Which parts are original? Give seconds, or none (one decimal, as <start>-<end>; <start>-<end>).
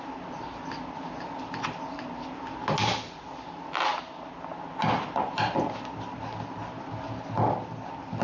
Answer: 0.0-8.2